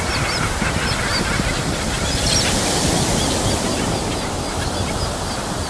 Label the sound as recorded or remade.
recorded